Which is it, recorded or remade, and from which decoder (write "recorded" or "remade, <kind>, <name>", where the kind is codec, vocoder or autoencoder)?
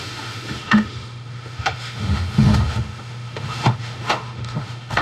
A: remade, autoencoder, DAC-VAE